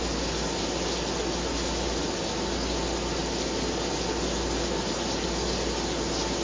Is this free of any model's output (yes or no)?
yes